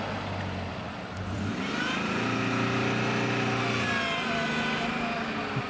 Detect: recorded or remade recorded